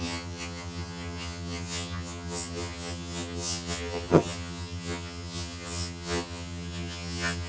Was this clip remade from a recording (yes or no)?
yes